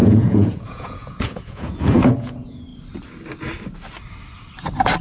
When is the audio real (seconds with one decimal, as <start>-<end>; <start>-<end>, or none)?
2.7-5.0